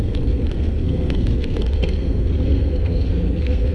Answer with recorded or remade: remade